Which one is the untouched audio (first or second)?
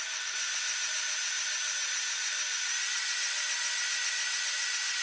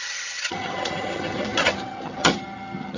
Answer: first